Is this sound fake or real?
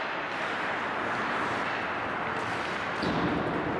real